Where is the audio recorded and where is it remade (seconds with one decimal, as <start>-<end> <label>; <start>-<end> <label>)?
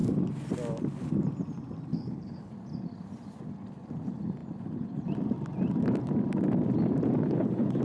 0.0-1.9 recorded; 1.9-2.5 remade; 2.5-7.2 recorded; 7.2-7.8 remade